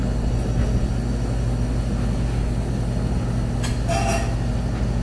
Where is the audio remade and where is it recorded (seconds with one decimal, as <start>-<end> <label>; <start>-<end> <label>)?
0.0-5.0 recorded